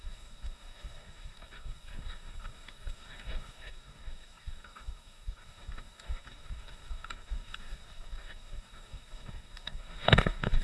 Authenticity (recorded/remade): remade